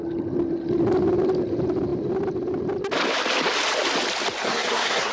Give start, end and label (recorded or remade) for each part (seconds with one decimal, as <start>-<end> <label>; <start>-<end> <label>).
0.0-4.4 recorded; 4.4-5.1 remade